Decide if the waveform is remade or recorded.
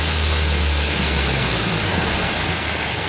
remade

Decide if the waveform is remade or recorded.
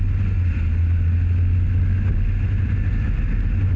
recorded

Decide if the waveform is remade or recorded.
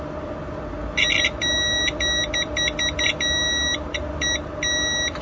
recorded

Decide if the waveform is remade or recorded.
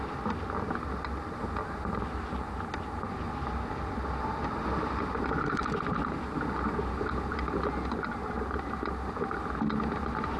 recorded